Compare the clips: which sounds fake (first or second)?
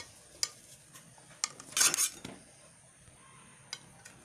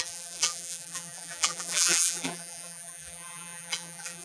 second